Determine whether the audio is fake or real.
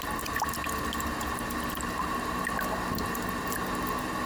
real